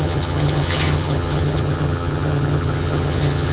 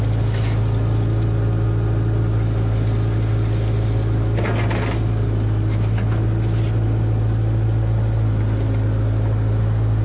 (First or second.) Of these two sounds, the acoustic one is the second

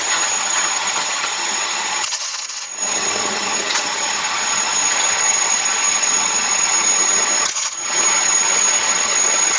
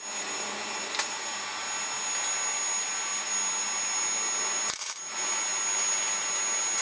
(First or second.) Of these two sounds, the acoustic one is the second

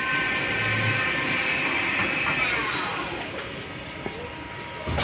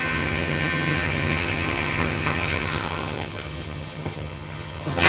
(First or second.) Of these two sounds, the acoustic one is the first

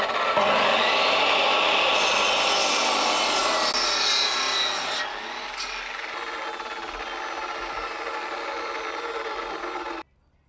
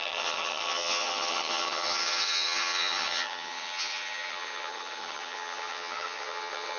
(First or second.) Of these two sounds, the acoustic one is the first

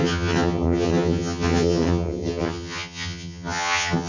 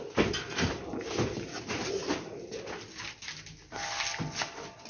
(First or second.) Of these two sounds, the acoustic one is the second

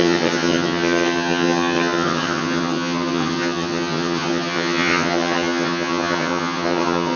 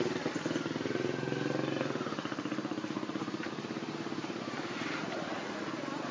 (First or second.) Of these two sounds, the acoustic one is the second